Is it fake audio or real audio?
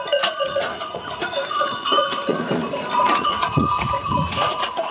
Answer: fake